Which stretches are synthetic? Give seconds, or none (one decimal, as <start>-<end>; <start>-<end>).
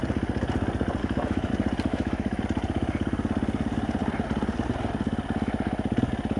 1.0-1.5; 1.9-2.4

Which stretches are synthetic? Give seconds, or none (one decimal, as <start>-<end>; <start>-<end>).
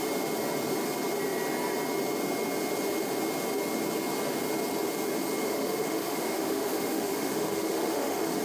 5.4-8.4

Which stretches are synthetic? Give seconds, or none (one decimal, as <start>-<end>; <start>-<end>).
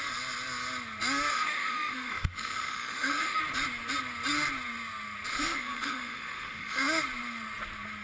1.3-3.4; 5.3-7.0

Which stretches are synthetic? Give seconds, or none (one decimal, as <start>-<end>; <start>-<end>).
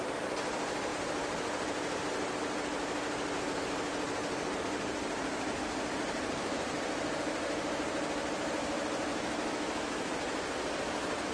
9.1-10.1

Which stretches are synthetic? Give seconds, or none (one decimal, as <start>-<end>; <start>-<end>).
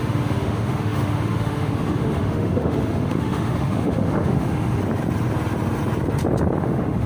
0.0-4.8; 6.6-7.1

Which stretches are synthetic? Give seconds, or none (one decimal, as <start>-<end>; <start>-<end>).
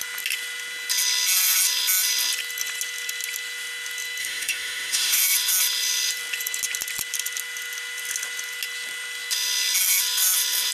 4.2-5.2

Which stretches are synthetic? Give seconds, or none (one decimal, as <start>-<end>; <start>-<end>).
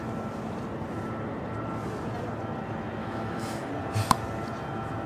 3.0-3.7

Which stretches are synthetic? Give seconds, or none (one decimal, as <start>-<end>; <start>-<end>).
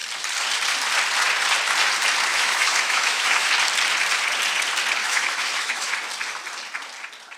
2.3-3.5; 5.0-5.9